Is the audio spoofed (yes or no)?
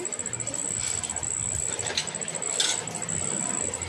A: no